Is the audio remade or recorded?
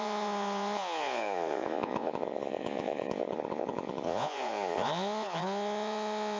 remade